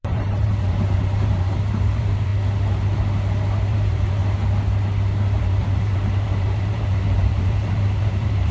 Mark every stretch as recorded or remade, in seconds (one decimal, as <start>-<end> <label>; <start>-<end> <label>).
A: 0.0-2.3 remade; 2.3-3.7 recorded; 3.7-4.2 remade; 4.2-5.4 recorded; 5.4-8.5 remade